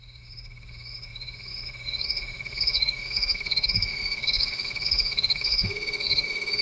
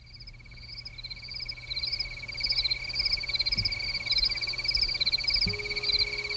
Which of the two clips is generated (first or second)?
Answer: first